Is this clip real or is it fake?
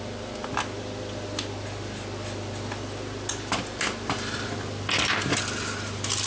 real